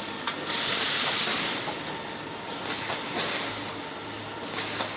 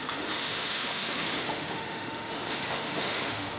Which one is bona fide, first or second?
first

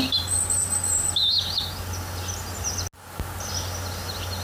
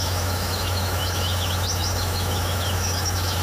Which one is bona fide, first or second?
first